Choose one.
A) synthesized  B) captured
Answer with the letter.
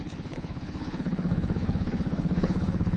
A